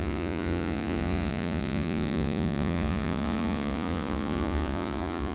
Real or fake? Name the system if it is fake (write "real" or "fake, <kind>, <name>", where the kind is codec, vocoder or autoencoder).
fake, vocoder, Vocos